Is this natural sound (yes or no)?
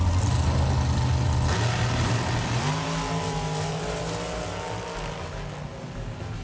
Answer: yes